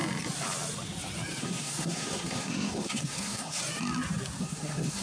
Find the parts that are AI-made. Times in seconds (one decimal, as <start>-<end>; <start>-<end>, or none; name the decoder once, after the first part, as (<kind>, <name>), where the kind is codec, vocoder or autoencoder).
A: 1.4-3.6 (codec, SNAC); 4.4-5.0